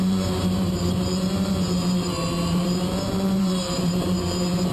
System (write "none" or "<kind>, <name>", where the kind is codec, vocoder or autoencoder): vocoder, BigVGAN v2